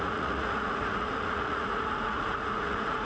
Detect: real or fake fake